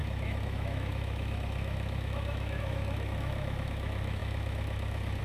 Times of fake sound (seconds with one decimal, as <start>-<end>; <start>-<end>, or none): 0.0-5.2